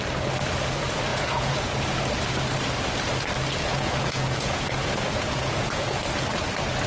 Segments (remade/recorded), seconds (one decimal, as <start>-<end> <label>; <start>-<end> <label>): 0.0-1.1 recorded; 1.1-1.7 remade; 1.7-3.7 recorded; 3.7-6.0 remade; 6.0-6.9 recorded